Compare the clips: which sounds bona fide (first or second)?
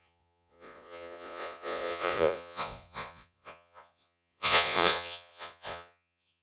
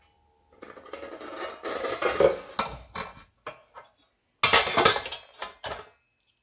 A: second